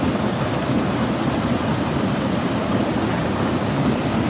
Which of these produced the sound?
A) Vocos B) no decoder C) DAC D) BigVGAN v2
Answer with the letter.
D